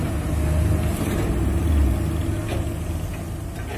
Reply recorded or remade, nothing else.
recorded